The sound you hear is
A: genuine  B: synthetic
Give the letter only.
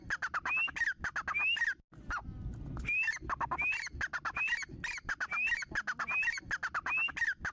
A